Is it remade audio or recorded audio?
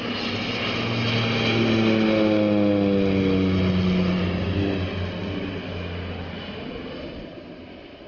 recorded